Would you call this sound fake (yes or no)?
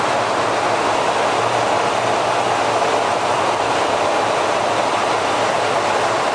no